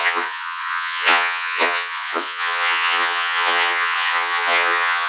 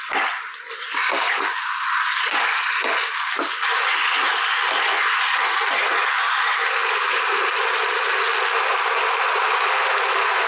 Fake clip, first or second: first